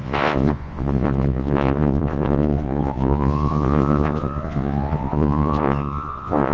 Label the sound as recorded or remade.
remade